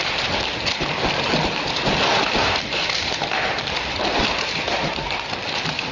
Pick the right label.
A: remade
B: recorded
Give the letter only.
B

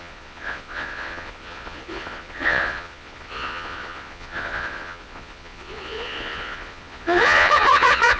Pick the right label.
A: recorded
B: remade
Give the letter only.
B